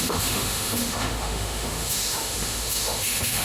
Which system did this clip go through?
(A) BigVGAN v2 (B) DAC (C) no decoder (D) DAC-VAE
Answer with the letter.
D